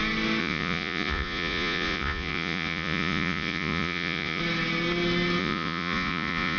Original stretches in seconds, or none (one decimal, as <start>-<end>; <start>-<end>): 0.0-0.4; 4.4-5.4